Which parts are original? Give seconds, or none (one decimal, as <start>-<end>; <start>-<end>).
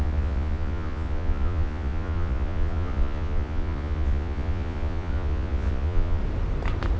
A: 6.2-7.0